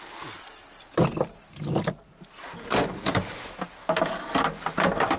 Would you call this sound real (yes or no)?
yes